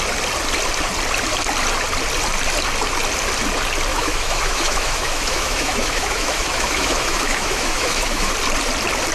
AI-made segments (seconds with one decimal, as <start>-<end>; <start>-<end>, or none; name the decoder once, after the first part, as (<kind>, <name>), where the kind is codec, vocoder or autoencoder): 3.9-8.3 (autoencoder, DAC-VAE)